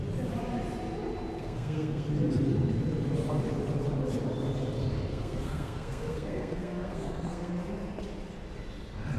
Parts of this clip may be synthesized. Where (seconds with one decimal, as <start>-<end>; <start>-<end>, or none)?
1.4-2.1; 5.1-7.5

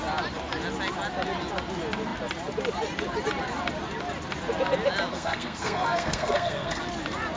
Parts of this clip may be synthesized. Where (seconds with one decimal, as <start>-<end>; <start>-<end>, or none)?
5.1-6.8

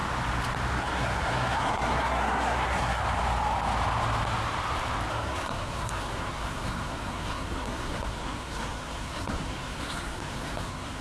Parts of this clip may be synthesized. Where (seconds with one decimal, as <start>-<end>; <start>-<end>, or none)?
0.8-3.0; 5.1-11.0

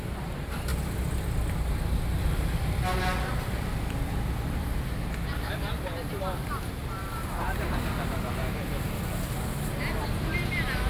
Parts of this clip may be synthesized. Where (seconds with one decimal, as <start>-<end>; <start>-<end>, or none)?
none